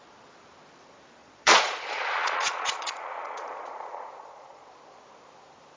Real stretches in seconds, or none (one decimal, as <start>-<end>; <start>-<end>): 0.0-1.2; 4.7-5.8